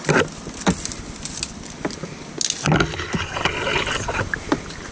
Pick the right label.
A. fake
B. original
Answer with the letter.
B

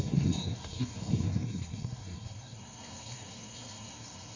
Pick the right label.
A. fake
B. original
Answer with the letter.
A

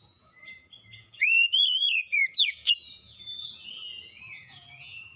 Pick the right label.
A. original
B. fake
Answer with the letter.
B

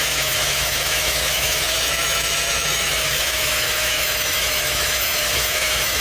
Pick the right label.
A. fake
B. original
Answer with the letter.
A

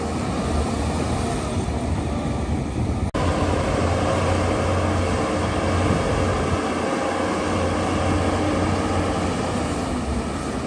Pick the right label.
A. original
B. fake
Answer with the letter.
A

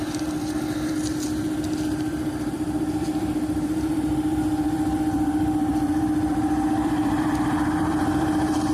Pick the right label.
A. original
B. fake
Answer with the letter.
B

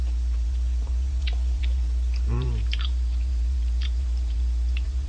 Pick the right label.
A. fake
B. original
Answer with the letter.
A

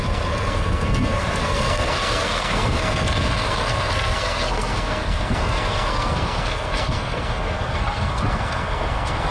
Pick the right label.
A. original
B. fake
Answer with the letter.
B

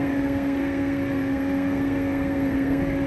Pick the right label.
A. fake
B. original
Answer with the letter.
A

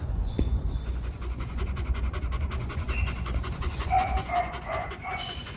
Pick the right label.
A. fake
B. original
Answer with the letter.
A